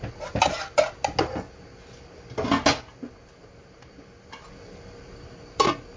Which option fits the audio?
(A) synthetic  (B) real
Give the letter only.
B